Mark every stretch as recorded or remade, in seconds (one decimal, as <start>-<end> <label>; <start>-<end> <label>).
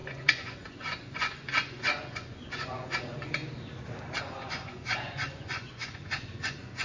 0.0-3.4 remade; 3.4-4.2 recorded; 4.2-6.8 remade